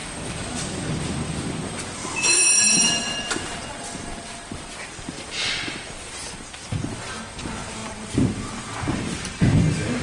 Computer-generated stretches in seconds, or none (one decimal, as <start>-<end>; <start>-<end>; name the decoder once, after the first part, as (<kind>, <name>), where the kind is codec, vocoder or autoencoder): 2.0-4.6 (vocoder, BigVGAN v2); 7.8-9.4